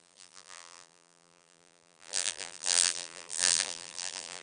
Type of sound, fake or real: fake